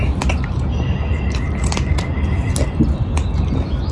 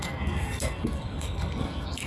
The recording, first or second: first